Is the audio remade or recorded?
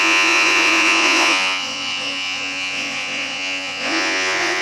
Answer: remade